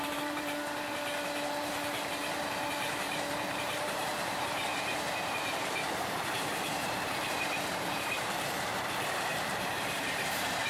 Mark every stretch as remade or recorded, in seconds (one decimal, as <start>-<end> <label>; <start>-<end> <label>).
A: 0.0-8.7 remade; 8.7-9.3 recorded; 9.3-10.7 remade